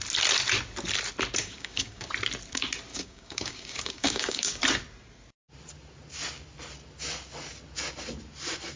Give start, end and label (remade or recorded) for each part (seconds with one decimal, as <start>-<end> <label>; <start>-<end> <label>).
0.0-1.4 recorded; 1.4-2.1 remade; 2.1-2.9 recorded; 2.9-4.6 remade; 4.6-8.8 recorded